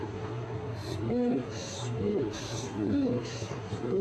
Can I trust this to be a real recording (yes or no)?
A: no